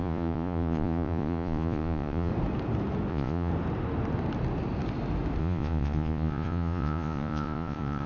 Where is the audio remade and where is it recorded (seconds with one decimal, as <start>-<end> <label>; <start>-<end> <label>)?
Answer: 0.0-2.3 remade; 2.3-3.1 recorded; 3.1-3.5 remade; 3.5-5.4 recorded; 5.4-8.1 remade

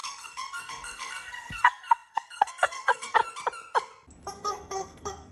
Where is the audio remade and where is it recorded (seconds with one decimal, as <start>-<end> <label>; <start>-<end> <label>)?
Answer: 0.0-3.2 remade; 3.2-4.3 recorded; 4.3-5.3 remade

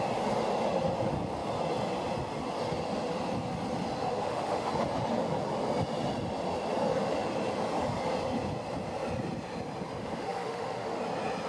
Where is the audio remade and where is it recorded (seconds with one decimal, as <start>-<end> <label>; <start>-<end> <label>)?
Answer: 0.0-4.0 recorded; 4.0-4.7 remade; 4.7-10.0 recorded; 10.0-11.0 remade; 11.0-11.5 recorded

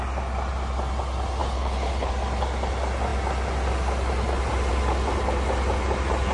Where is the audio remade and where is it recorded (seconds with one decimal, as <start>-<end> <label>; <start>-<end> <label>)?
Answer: 0.0-1.4 recorded; 1.4-2.1 remade; 2.1-6.3 recorded

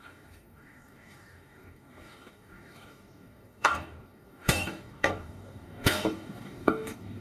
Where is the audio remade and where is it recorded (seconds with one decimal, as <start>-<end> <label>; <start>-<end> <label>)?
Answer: 0.0-7.2 remade

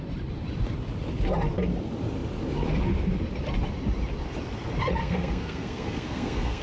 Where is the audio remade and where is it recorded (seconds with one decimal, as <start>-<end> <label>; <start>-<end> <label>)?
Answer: 0.0-5.0 recorded; 5.0-6.6 remade

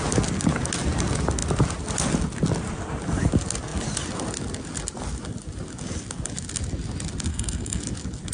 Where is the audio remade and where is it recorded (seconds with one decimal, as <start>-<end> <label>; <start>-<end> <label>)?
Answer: 0.0-7.3 recorded; 7.3-7.8 remade; 7.8-8.3 recorded